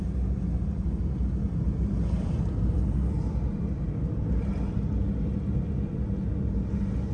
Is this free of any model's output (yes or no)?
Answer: yes